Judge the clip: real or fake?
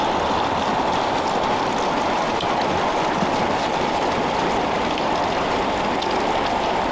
real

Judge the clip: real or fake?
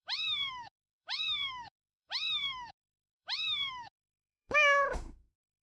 fake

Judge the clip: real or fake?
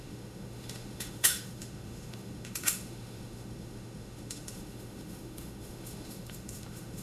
fake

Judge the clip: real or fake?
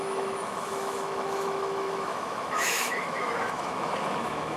fake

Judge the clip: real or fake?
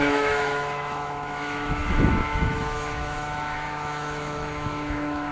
fake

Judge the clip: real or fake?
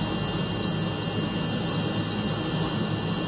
real